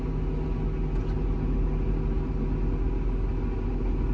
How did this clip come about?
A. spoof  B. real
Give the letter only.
B